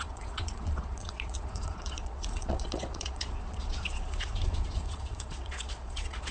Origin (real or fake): fake